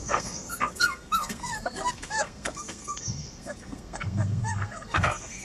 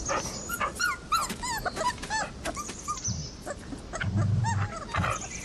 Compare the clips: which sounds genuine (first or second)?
second